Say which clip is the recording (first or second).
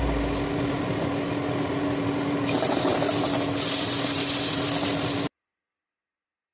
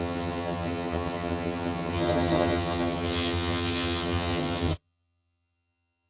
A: first